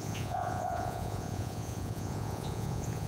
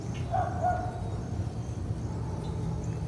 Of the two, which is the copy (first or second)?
first